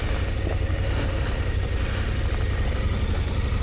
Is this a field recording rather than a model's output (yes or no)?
yes